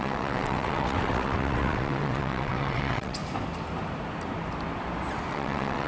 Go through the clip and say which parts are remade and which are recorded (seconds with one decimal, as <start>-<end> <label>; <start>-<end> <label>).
0.0-3.2 remade; 3.2-5.3 recorded; 5.3-5.9 remade